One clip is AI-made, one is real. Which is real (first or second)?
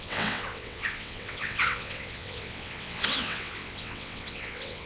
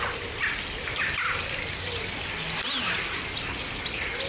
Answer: second